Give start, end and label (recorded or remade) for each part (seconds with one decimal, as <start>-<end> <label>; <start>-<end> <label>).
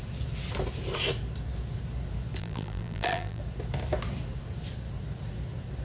0.0-2.4 recorded; 2.4-3.4 remade; 3.4-5.8 recorded